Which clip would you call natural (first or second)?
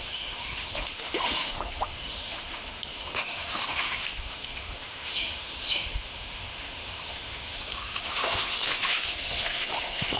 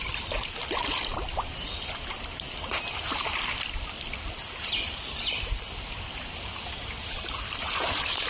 second